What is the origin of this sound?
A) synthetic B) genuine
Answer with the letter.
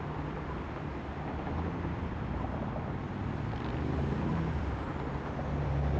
B